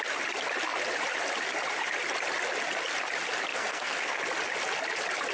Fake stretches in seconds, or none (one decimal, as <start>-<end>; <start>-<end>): 3.5-4.2